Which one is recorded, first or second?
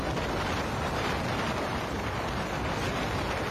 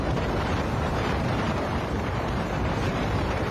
first